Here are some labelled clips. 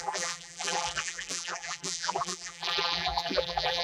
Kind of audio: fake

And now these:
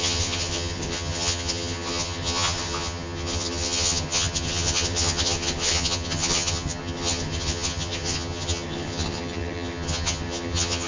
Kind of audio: fake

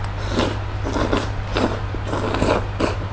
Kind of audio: real